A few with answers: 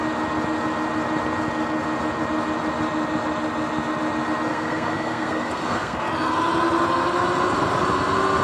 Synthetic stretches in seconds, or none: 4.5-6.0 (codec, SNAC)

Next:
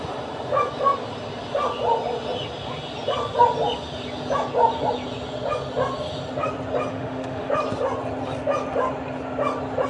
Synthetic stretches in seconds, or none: 6.9-7.5 (autoencoder, DAC-VAE)

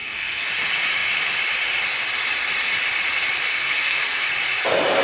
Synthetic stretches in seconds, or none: 0.0-0.5 (codec, SNAC); 3.5-4.3

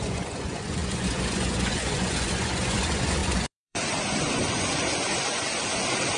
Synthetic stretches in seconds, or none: 0.0-6.2 (vocoder, Vocos)

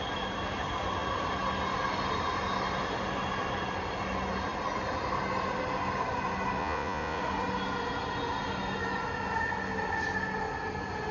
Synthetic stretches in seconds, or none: 6.6-7.2 (vocoder, Vocos)